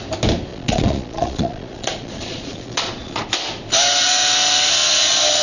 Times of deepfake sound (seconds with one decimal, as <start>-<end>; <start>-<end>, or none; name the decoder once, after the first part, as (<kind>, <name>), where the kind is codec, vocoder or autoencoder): 0.5-3.2 (vocoder, Vocos)